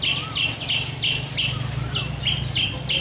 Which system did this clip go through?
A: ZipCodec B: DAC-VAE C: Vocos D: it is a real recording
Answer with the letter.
D